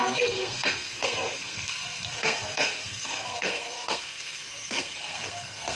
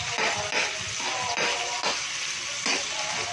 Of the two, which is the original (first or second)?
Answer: second